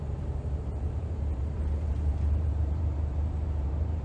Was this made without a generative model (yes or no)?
no